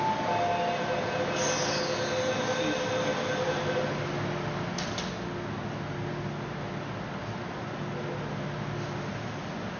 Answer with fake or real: real